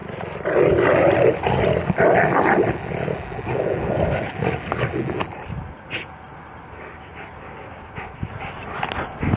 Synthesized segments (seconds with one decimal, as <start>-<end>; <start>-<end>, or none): none